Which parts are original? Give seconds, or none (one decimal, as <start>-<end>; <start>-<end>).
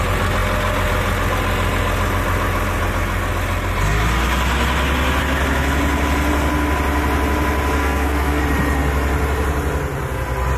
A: 0.0-7.8; 8.4-10.6